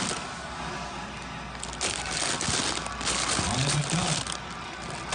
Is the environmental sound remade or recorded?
recorded